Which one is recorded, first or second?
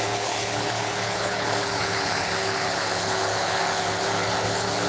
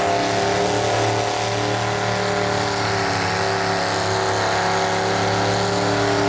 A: second